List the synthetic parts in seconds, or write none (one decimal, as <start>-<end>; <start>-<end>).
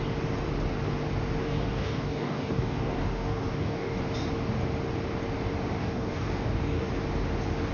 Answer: 1.4-4.0; 5.8-6.9